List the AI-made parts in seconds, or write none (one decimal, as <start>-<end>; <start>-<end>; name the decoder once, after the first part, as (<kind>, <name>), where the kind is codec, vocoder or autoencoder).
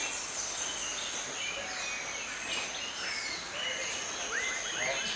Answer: none